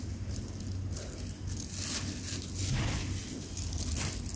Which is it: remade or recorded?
recorded